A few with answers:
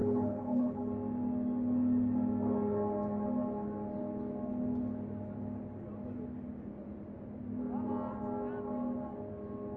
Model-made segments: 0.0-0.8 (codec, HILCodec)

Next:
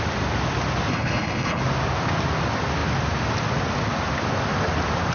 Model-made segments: 0.9-1.6 (codec, HILCodec)

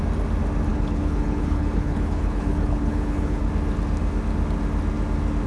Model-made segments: 0.7-3.5 (codec, HILCodec)

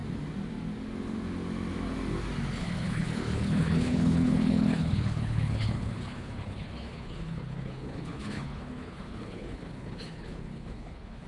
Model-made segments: 2.6-11.3 (codec, HILCodec)

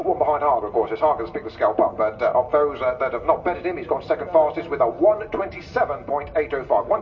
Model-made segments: none